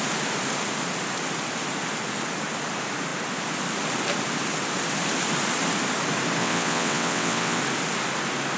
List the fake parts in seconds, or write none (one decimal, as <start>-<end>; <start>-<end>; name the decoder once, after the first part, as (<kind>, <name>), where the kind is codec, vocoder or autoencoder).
6.4-7.6 (vocoder, WaveNeXt)